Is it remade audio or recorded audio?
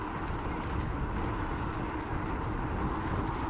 recorded